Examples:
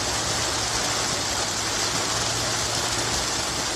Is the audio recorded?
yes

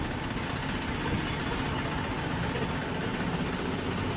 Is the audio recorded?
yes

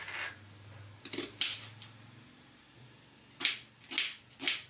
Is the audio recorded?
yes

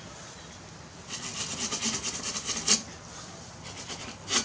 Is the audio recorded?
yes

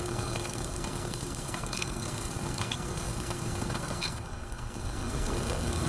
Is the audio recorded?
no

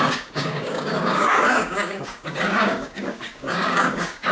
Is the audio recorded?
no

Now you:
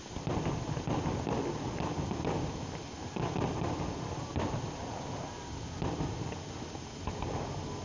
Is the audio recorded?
yes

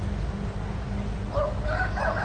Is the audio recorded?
yes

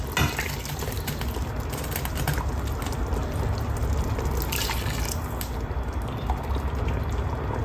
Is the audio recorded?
yes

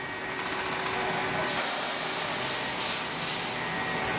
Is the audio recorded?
yes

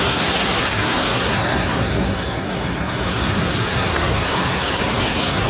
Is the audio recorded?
no